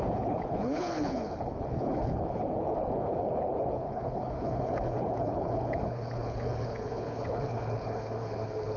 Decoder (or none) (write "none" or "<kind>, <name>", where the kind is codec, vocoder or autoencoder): codec, HILCodec